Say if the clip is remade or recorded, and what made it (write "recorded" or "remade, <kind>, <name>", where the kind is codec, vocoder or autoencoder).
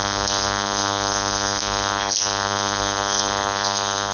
remade, codec, SNAC